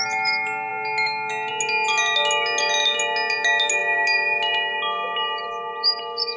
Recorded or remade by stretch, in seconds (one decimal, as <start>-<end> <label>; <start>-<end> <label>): 0.0-6.4 recorded